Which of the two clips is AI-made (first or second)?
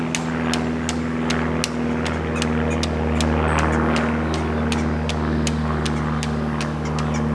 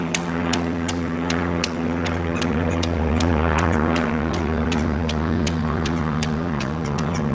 second